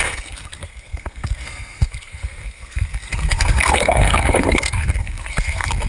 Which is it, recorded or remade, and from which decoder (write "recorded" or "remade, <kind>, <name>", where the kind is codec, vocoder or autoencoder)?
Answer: remade, codec, SNAC